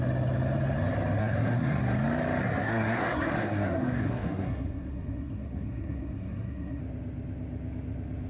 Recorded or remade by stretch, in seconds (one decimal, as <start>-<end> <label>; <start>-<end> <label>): 0.0-1.2 recorded; 1.2-1.8 remade; 1.8-2.4 recorded; 2.4-6.8 remade; 6.8-8.3 recorded